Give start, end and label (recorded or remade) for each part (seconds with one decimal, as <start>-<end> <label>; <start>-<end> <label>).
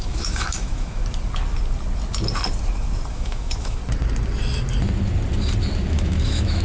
0.0-1.0 remade; 1.0-3.1 recorded; 3.1-3.8 remade; 3.8-5.9 recorded; 5.9-6.6 remade